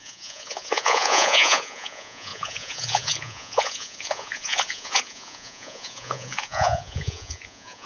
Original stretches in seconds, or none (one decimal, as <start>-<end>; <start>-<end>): none